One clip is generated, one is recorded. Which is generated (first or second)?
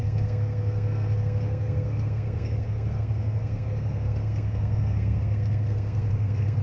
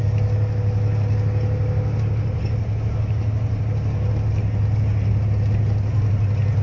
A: first